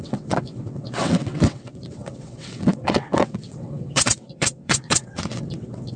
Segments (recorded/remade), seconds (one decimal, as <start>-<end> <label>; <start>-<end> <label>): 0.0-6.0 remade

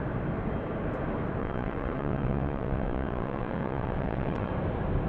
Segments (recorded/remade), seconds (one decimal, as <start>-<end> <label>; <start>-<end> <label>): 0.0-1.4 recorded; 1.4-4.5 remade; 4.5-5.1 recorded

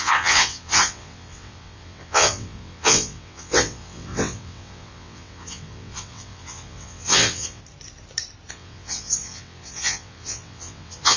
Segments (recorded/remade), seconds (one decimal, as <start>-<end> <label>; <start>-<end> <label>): 0.0-7.6 remade; 7.6-8.5 recorded; 8.5-11.2 remade

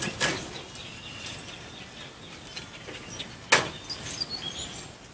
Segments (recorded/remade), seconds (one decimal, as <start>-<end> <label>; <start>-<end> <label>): 0.0-5.1 recorded

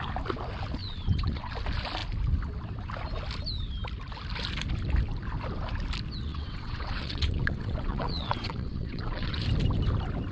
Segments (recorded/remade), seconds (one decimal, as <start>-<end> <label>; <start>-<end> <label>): 0.0-0.8 recorded; 0.8-1.5 remade; 1.5-6.3 recorded; 6.3-9.4 remade; 9.4-10.3 recorded